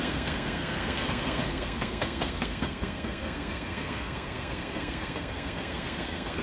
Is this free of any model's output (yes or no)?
no